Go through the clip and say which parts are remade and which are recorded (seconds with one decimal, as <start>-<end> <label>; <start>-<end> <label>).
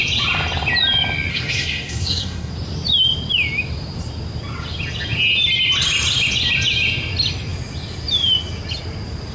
0.0-1.3 recorded; 1.3-2.5 remade; 2.5-9.3 recorded